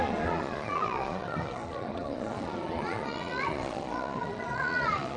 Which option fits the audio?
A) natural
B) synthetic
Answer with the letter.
B